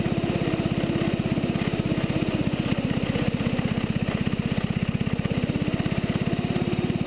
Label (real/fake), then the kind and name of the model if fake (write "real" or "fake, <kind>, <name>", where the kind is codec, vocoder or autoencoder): real